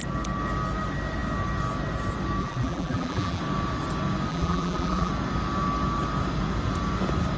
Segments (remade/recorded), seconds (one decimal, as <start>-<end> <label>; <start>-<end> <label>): 0.0-2.4 recorded; 2.4-3.4 remade; 3.4-4.3 recorded; 4.3-5.1 remade; 5.1-7.4 recorded